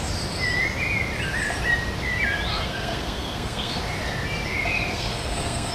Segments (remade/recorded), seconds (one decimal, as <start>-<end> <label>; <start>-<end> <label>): 0.0-2.5 recorded; 2.5-3.8 remade; 3.8-4.9 recorded; 4.9-5.7 remade